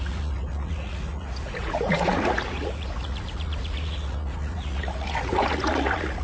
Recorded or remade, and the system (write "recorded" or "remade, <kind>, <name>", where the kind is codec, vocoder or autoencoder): remade, vocoder, Vocos